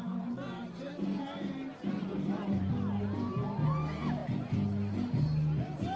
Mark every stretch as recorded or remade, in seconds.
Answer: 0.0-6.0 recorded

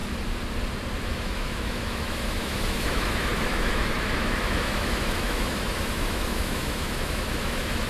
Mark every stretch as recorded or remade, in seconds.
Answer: 0.0-1.0 recorded; 1.0-7.9 remade

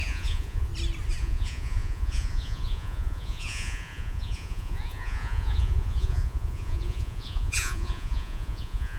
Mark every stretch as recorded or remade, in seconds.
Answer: 0.0-0.7 remade; 0.7-1.2 recorded; 1.2-9.0 remade